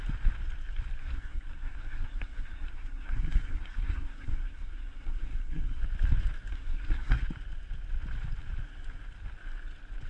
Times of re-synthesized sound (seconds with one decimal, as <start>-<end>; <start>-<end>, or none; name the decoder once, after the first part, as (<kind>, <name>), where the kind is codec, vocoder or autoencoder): 1.0-5.8 (codec, SNAC); 6.5-7.2